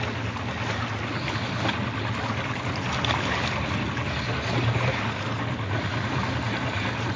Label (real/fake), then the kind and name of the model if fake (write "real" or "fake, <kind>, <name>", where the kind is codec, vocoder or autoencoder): real